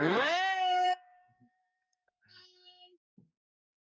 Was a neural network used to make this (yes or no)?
yes